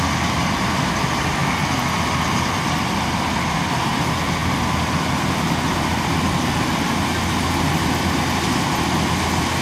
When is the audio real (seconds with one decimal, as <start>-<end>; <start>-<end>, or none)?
0.0-9.6